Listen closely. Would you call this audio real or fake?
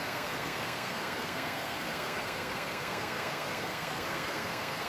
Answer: fake